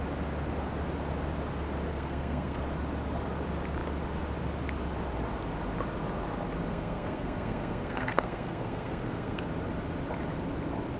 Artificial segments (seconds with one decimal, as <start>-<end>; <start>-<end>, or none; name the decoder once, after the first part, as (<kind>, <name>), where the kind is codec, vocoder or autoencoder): 1.9-2.6 (codec, SNAC); 6.7-9.5